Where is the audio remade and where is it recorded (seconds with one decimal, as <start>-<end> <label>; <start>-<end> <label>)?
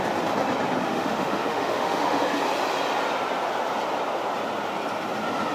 0.0-0.8 recorded; 0.8-2.2 remade; 2.2-5.5 recorded